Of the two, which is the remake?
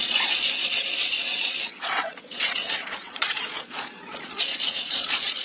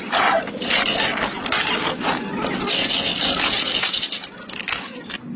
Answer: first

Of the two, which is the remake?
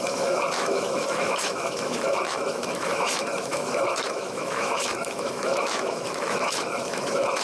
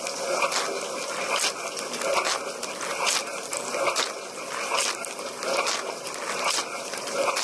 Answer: first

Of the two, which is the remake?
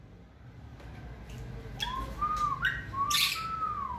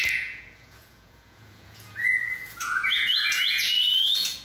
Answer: second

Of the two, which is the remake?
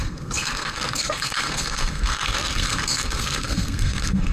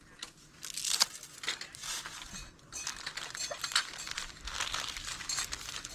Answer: first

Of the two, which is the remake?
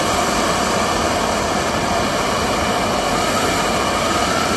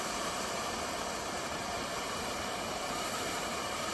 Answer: second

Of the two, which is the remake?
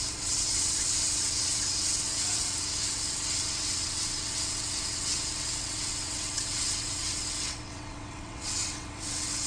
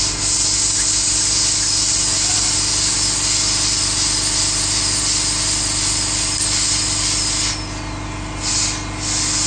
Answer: first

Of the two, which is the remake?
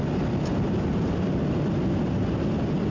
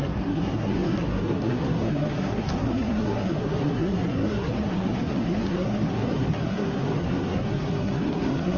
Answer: second